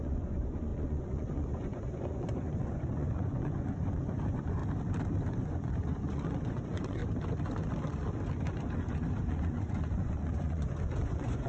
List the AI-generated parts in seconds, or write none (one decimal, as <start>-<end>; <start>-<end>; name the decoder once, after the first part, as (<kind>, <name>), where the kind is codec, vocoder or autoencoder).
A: 0.0-4.6 (vocoder, Vocos); 5.4-7.0; 9.3-11.5